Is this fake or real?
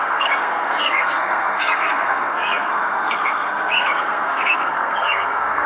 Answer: fake